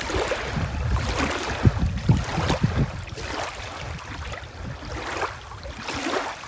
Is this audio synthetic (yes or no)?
no